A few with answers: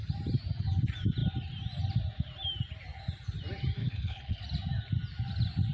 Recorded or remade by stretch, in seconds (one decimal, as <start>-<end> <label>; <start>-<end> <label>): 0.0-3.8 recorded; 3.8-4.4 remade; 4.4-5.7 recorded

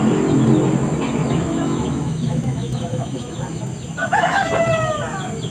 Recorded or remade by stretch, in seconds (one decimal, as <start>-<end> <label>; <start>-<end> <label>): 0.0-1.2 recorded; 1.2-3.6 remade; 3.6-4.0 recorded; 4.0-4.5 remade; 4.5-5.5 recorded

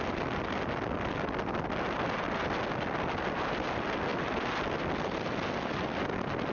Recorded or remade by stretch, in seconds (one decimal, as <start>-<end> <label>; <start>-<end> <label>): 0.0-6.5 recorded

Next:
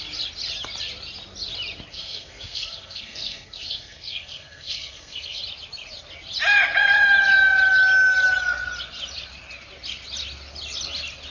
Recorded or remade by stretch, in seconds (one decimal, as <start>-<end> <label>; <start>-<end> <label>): 0.0-1.9 recorded; 1.9-5.4 remade; 5.4-11.3 recorded